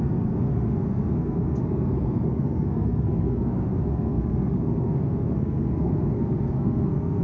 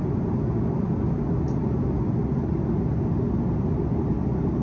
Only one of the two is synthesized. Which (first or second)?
first